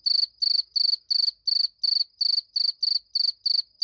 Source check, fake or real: real